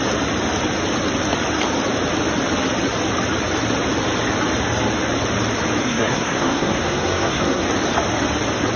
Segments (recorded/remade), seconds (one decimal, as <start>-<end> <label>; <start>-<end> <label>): 0.0-5.8 recorded; 5.8-7.6 remade; 7.6-8.8 recorded